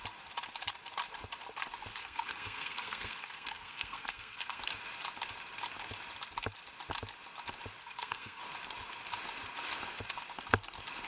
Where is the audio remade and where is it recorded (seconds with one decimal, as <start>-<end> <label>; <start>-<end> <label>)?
0.0-1.9 recorded; 1.9-4.6 remade; 4.6-7.8 recorded; 7.8-8.4 remade; 8.4-11.1 recorded